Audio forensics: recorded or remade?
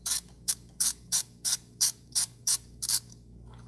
remade